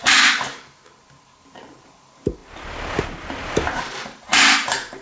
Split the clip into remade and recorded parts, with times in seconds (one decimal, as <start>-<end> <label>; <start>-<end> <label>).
0.0-2.4 remade; 2.4-3.0 recorded; 3.0-5.0 remade